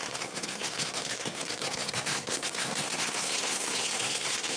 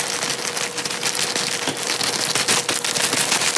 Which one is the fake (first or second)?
first